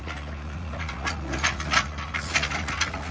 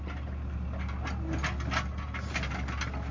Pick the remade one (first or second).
first